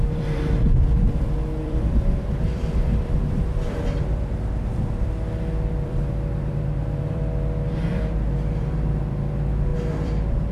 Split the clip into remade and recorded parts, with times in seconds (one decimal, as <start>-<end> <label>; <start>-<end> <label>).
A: 0.0-10.5 remade